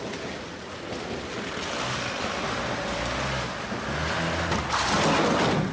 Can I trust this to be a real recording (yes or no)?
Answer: yes